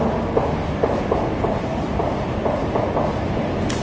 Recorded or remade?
recorded